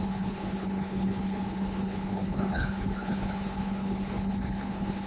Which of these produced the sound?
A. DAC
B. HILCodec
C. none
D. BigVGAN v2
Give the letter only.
B